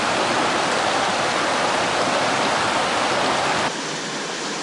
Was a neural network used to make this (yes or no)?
no